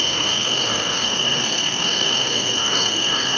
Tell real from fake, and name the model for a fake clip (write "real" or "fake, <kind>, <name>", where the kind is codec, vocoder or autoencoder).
fake, codec, SNAC